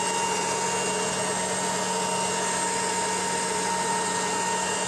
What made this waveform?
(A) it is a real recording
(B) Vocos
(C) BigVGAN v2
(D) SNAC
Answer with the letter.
A